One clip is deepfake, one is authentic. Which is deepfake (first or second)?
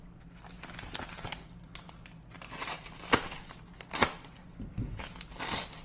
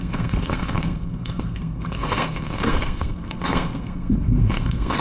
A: second